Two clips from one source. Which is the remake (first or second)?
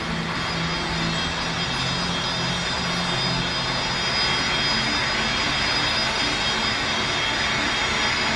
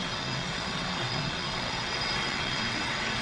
second